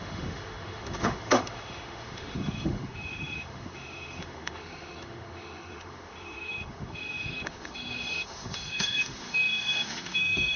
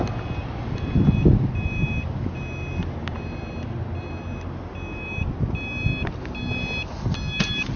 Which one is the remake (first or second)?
first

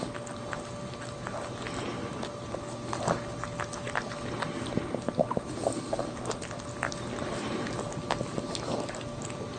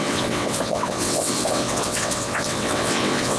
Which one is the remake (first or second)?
second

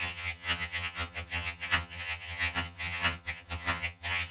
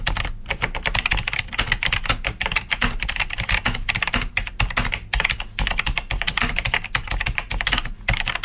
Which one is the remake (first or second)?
first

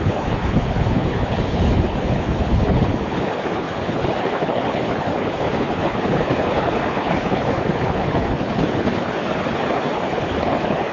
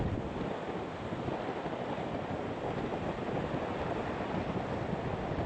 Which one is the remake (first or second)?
first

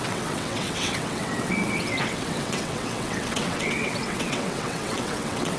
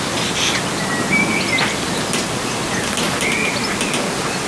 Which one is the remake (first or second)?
first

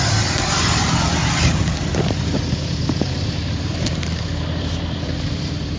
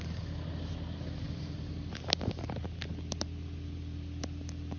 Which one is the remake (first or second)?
first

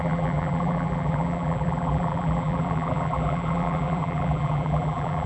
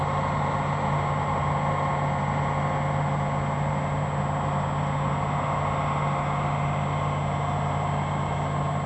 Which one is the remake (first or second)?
first